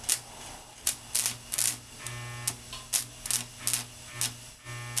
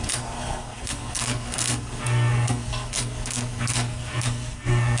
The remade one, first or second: second